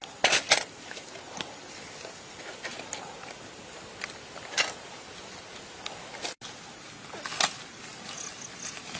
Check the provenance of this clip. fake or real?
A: real